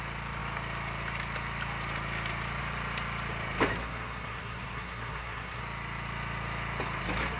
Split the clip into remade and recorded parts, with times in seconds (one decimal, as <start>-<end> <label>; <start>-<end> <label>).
0.0-3.7 recorded; 3.7-5.6 remade; 5.6-7.4 recorded